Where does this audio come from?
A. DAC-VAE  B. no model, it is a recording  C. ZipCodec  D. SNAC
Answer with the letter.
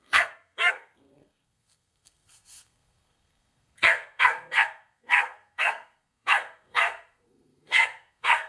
D